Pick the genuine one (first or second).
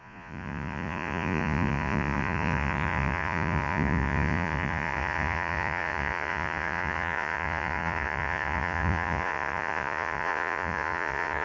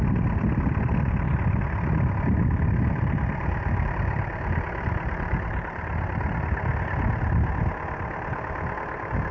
second